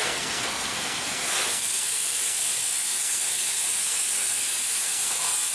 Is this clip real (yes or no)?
no